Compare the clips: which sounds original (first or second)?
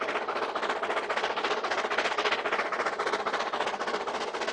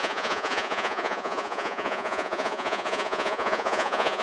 first